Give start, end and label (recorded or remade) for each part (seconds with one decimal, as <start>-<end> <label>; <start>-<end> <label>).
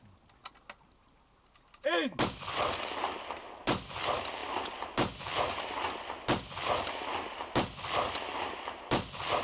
0.0-9.4 recorded